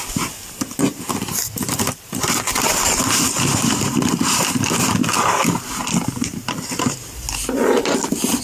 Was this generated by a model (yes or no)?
no